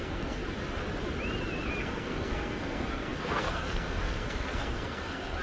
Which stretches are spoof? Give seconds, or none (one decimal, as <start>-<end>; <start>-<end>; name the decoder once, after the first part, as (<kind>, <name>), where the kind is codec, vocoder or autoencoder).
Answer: 0.0-0.4 (codec, SNAC); 1.8-5.4